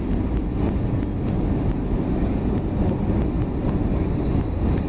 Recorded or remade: recorded